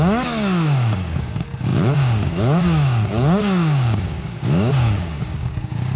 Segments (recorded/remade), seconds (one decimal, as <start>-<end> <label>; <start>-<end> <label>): 0.0-6.0 remade